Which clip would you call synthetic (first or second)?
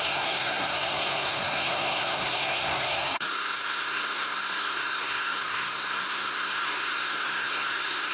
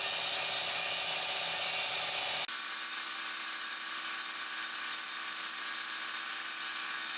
first